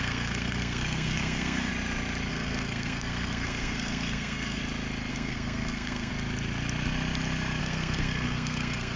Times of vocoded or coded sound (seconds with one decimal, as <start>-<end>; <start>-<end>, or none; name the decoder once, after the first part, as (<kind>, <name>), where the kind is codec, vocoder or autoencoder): 0.0-1.7 (codec, SNAC); 2.3-4.6; 5.1-6.1; 7.6-9.0